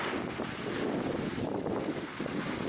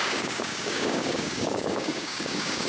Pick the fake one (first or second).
second